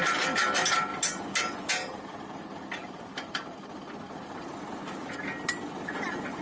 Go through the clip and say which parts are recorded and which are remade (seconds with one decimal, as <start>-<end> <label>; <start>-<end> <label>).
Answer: 0.0-6.4 recorded